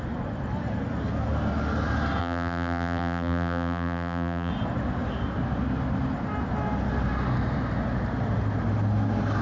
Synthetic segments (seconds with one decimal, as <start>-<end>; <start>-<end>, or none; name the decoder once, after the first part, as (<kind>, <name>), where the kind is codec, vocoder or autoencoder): 2.2-4.5 (vocoder, BigVGAN v2)